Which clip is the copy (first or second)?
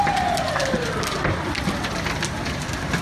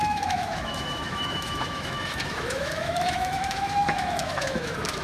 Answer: second